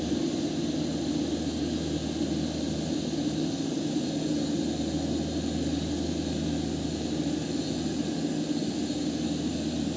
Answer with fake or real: real